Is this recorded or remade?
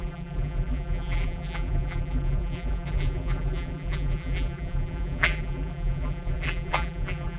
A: remade